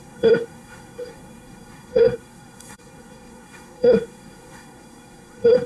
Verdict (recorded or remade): remade